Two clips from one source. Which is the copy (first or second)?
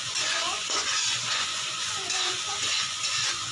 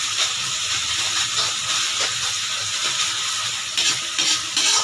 first